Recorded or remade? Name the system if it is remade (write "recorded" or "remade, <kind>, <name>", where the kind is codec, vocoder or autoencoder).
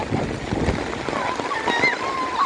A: recorded